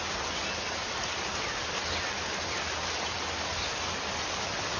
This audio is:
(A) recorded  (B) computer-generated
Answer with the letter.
A